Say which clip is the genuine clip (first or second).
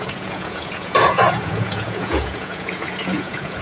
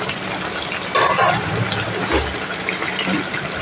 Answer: second